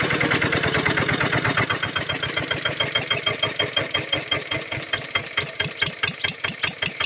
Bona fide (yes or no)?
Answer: yes